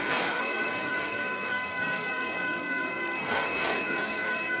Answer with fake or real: fake